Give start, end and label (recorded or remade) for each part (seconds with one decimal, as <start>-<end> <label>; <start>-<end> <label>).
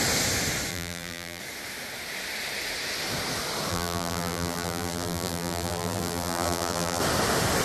0.0-0.7 recorded; 0.7-1.4 remade; 1.4-3.7 recorded; 3.7-7.0 remade; 7.0-7.6 recorded